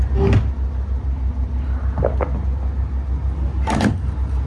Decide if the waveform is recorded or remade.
recorded